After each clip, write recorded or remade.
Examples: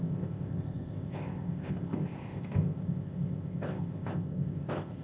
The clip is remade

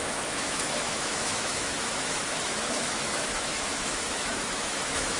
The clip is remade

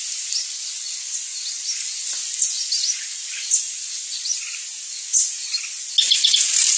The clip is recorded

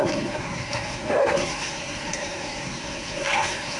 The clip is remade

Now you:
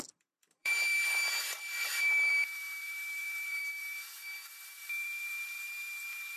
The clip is remade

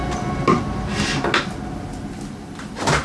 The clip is recorded